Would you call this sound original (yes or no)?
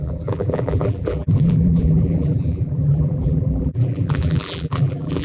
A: no